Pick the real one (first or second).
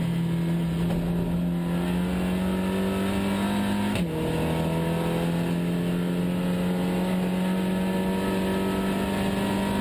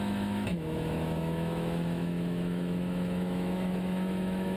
first